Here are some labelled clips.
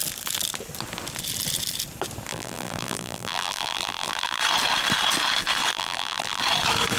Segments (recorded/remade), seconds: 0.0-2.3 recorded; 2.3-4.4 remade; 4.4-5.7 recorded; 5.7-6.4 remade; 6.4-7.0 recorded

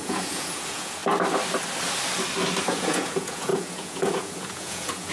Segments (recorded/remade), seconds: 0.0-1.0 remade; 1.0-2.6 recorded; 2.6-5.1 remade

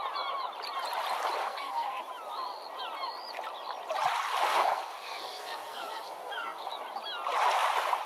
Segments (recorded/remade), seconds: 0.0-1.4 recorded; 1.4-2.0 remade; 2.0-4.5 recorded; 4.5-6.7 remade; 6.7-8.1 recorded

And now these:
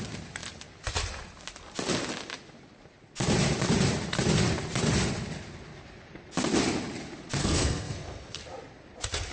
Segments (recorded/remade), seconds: 0.0-7.4 recorded; 7.4-8.4 remade; 8.4-9.3 recorded